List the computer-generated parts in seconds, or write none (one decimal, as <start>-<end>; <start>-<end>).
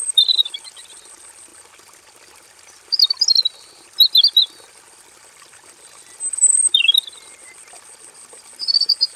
none